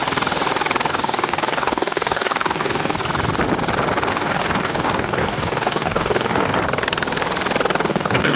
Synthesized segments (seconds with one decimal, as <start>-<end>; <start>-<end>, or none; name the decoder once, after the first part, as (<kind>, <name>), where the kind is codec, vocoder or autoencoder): 0.9-3.0 (codec, DAC); 4.1-6.5; 7.9-8.4